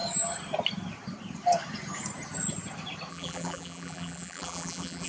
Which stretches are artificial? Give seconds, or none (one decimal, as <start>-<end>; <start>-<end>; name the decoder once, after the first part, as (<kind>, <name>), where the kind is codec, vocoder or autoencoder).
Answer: 3.1-5.1 (vocoder, BigVGAN v2)